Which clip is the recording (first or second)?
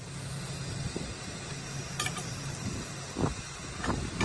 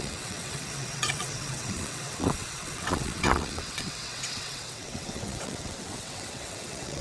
first